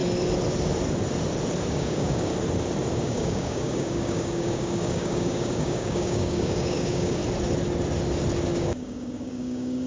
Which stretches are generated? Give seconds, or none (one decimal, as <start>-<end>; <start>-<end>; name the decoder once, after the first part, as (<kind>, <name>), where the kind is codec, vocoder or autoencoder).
1.7-2.3 (codec, DAC); 2.9-7.2; 8.5-9.9